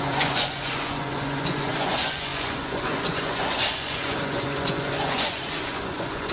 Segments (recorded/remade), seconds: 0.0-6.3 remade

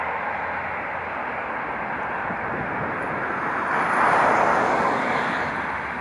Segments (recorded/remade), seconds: 0.0-4.5 recorded; 4.5-5.5 remade; 5.5-6.0 recorded

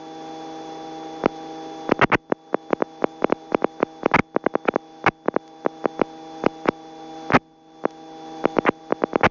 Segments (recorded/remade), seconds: 0.0-9.3 recorded